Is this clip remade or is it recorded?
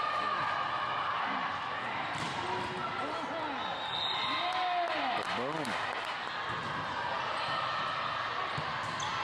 recorded